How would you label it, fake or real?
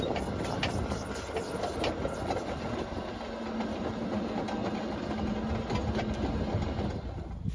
real